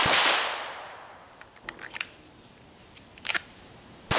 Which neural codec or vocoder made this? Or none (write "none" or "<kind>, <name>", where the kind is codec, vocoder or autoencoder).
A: vocoder, BigVGAN v2